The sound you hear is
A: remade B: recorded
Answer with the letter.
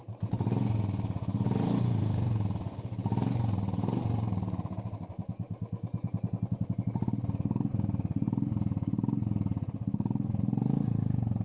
A